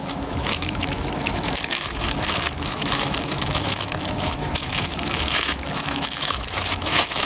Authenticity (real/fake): fake